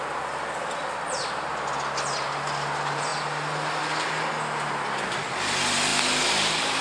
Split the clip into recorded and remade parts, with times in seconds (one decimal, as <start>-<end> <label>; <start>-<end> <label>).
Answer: 0.0-6.8 recorded